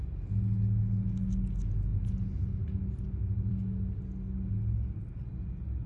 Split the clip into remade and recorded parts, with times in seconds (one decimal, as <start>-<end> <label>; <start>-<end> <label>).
0.0-5.9 recorded